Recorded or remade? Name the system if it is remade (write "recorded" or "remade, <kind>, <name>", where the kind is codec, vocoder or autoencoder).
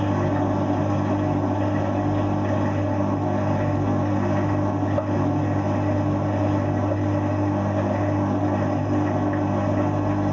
recorded